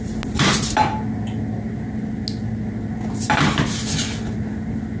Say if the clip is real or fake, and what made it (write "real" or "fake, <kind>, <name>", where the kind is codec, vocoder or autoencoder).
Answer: real